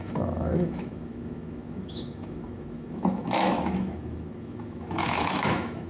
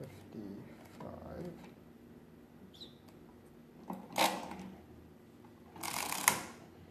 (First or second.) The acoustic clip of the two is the second